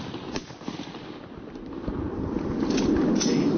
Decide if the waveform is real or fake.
real